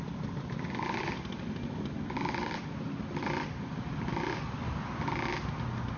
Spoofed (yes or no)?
no